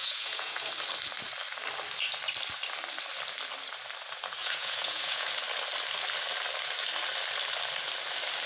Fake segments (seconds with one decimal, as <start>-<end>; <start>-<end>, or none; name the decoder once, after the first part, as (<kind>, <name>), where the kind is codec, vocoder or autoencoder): 0.0-0.7 (vocoder, Vocos); 4.4-5.3